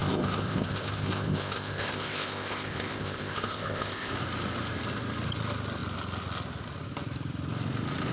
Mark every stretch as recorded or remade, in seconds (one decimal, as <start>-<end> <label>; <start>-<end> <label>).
0.0-4.1 remade; 4.1-8.1 recorded